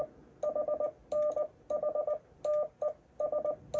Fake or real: real